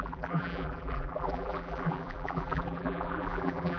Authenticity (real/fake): fake